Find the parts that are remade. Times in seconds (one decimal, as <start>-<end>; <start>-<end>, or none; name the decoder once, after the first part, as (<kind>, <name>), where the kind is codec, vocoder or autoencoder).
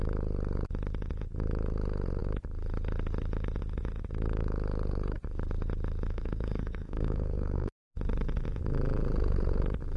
6.1-7.7 (codec, SNAC)